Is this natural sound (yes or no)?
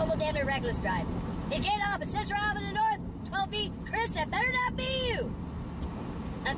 yes